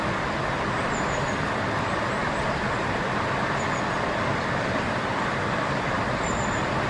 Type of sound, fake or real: real